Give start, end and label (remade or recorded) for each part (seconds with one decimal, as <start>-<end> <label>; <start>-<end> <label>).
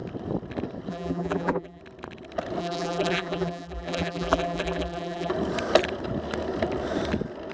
0.0-0.9 recorded; 0.9-1.8 remade; 1.8-2.6 recorded; 2.6-5.3 remade; 5.3-7.5 recorded